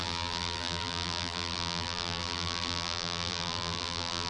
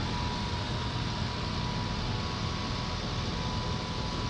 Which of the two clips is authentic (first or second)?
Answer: second